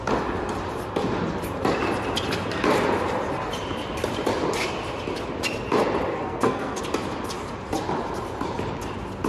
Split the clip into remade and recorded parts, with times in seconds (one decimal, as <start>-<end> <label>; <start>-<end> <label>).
0.0-6.1 recorded; 6.1-6.8 remade; 6.8-9.3 recorded